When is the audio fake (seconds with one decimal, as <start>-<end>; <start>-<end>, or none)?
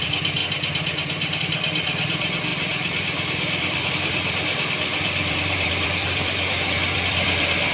0.0-7.7